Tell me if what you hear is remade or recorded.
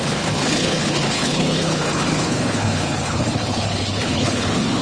remade